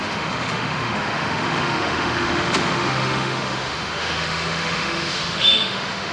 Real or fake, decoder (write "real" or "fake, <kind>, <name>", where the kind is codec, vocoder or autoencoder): fake, autoencoder, DAC-VAE